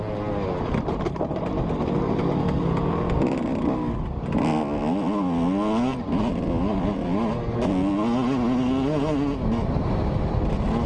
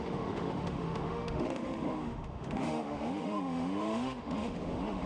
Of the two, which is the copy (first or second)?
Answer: second